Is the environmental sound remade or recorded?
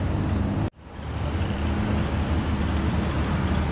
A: recorded